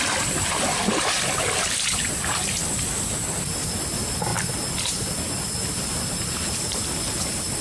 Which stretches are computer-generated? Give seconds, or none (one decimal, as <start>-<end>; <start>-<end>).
none